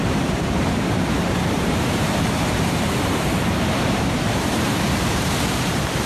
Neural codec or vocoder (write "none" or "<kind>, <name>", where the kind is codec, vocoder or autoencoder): vocoder, BigVGAN v2